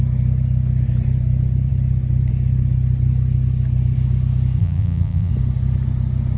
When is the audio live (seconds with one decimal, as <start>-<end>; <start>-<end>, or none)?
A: 0.0-4.6; 5.3-6.4